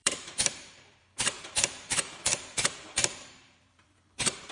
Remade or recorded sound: remade